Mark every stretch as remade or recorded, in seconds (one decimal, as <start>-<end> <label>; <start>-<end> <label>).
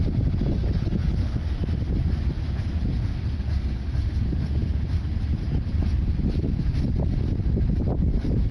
0.0-0.6 recorded; 0.6-1.4 remade; 1.4-8.5 recorded